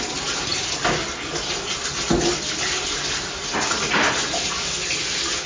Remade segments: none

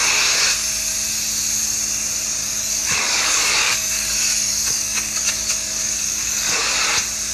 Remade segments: 2.4-6.7 (codec, DAC)

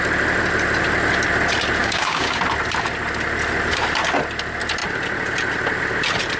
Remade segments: 1.8-2.4 (codec, DAC)